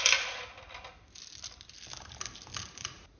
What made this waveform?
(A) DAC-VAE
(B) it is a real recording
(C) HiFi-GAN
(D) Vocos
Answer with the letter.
B